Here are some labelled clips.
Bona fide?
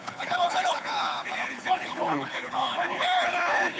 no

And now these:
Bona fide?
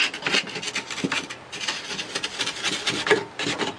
yes